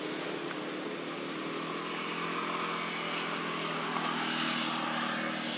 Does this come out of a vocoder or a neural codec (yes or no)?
no